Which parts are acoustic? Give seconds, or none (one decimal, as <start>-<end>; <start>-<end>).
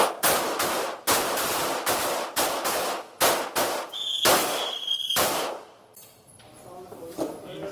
0.0-4.4; 6.7-7.7